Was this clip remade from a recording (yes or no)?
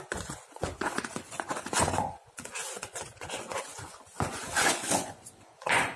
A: yes